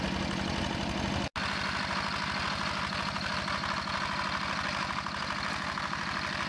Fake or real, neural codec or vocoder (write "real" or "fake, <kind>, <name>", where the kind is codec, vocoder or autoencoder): real